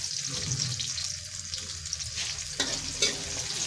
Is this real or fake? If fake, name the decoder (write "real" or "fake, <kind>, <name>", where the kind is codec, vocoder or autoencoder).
real